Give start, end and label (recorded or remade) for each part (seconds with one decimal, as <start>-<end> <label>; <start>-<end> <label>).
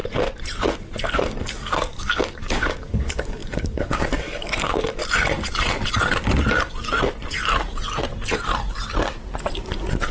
0.0-1.0 recorded; 1.0-5.0 remade; 5.0-10.1 recorded